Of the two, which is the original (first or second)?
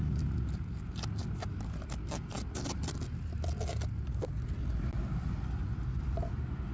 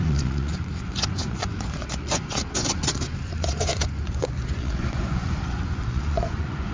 first